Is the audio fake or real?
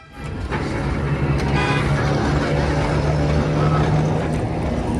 real